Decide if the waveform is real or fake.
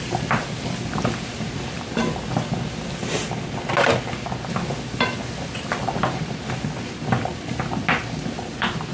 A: real